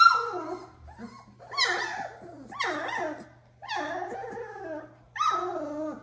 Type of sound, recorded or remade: recorded